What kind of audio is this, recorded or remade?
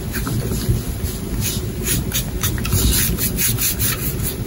recorded